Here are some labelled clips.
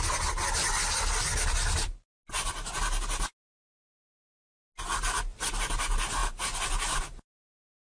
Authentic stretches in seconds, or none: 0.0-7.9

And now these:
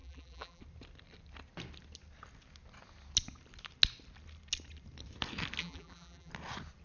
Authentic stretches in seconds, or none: 0.6-5.6; 6.3-6.8

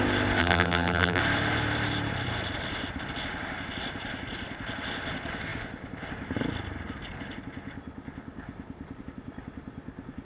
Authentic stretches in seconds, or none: 0.0-0.4; 1.2-10.2

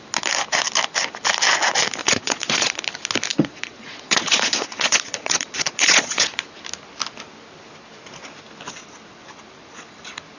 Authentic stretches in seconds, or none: 0.0-2.0; 2.8-3.3; 6.3-10.4

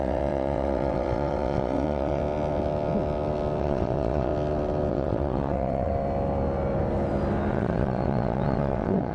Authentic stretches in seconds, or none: 2.2-3.6; 4.3-4.9; 5.9-7.5

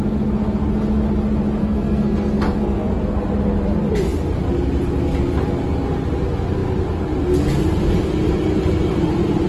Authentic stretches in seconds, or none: 0.0-1.6; 3.0-9.5

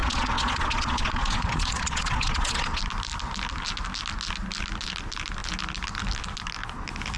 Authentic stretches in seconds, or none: 2.8-7.2

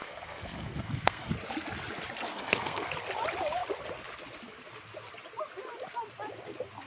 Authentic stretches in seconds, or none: 1.3-2.3; 2.9-6.9